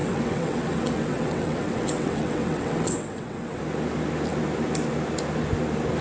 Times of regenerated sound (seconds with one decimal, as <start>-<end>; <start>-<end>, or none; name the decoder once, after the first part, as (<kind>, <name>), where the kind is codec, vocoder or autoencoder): 0.0-3.6 (vocoder, WaveNeXt)